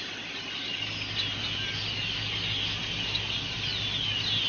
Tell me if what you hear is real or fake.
real